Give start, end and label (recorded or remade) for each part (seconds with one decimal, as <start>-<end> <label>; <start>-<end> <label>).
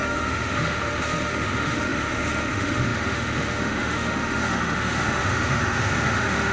0.0-6.5 remade